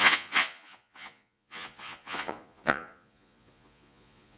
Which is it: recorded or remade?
remade